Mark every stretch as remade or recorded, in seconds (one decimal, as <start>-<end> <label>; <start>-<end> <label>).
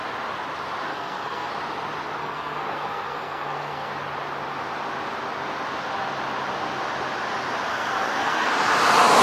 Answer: 0.0-0.9 recorded; 0.9-1.5 remade; 1.5-2.2 recorded; 2.2-3.9 remade; 3.9-7.7 recorded; 7.7-8.5 remade; 8.5-9.2 recorded